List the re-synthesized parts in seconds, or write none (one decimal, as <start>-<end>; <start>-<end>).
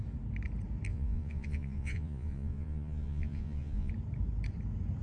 0.9-3.9